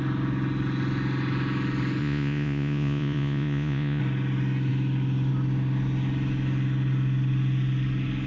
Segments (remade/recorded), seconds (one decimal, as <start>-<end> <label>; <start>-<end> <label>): 0.0-2.0 recorded; 2.0-4.0 remade; 4.0-8.3 recorded